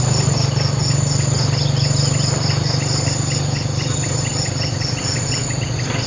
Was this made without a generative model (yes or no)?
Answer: yes